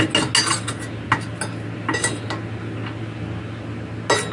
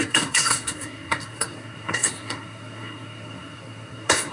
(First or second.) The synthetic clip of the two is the second